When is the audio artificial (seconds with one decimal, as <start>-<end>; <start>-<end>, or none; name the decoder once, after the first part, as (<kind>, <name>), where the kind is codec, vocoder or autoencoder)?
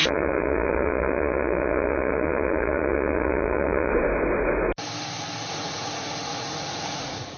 0.0-3.9 (vocoder, Vocos); 5.5-7.4